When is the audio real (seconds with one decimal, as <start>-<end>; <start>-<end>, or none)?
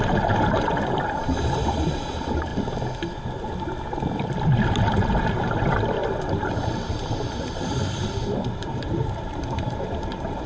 2.5-4.8